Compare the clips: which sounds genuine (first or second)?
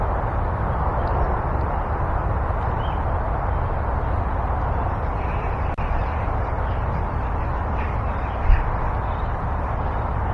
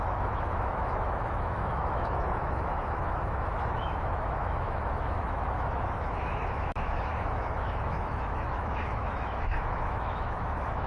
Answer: first